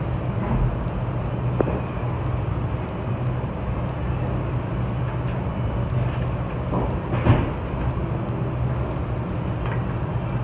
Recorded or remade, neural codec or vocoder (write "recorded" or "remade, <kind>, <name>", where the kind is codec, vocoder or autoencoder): recorded